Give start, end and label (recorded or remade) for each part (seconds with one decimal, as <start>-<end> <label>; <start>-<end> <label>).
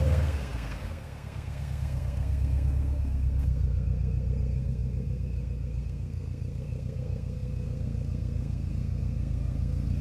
0.0-10.0 remade